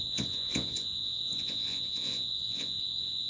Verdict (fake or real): fake